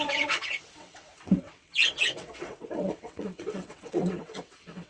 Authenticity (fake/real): fake